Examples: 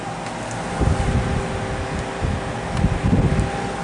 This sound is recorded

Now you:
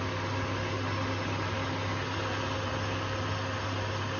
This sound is recorded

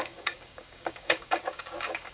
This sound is remade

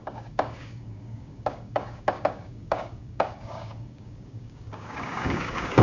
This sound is remade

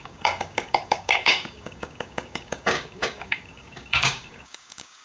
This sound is remade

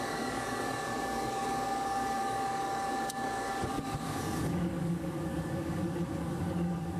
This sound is remade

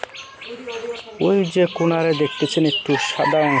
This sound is recorded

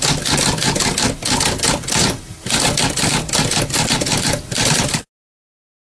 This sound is recorded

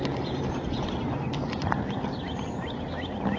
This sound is recorded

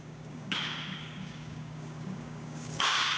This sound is remade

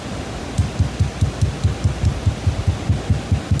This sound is recorded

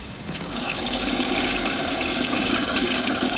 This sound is remade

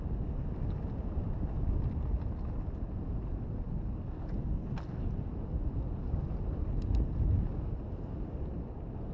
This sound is recorded